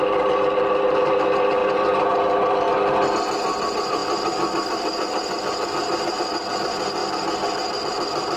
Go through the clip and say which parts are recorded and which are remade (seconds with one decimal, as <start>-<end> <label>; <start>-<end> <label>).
0.0-1.6 recorded; 1.6-2.7 remade; 2.7-4.0 recorded; 4.0-6.2 remade; 6.2-8.4 recorded